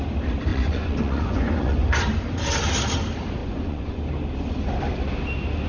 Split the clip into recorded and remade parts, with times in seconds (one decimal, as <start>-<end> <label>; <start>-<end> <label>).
0.0-0.5 recorded; 0.5-2.0 remade; 2.0-3.4 recorded; 3.4-4.0 remade; 4.0-5.7 recorded